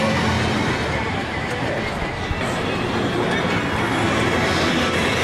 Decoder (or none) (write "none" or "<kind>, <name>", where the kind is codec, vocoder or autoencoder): none